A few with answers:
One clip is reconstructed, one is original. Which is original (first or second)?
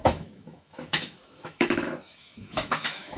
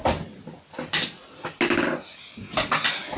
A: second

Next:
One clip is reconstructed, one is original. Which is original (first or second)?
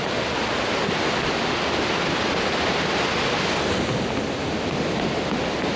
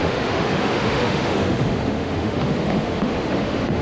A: first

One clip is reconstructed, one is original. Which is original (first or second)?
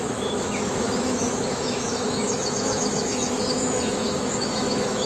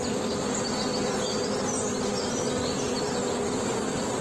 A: second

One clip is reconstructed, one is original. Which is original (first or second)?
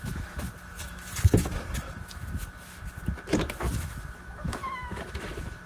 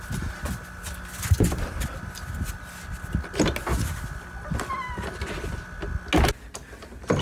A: second